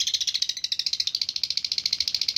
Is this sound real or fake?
real